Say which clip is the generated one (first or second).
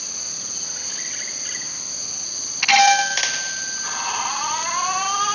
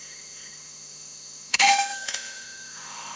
second